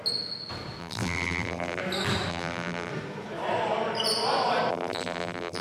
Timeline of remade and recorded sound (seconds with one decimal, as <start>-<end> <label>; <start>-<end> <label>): 0.0-0.8 recorded; 0.8-1.8 remade; 1.8-2.3 recorded; 2.3-2.9 remade; 2.9-4.7 recorded; 4.7-5.6 remade